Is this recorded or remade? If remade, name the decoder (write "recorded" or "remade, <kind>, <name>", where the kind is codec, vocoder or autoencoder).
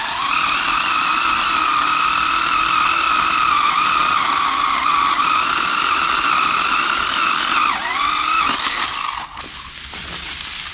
recorded